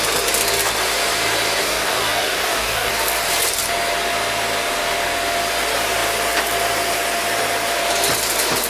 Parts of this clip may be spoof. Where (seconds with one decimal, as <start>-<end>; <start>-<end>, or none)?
1.6-2.9